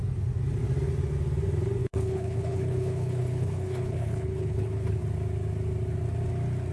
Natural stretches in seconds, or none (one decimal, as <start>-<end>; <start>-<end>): 0.0-1.8; 5.0-6.7